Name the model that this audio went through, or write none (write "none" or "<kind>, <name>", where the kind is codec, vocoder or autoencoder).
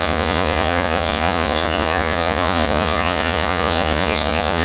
vocoder, Vocos